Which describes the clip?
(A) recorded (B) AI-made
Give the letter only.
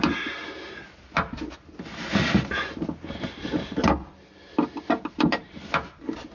A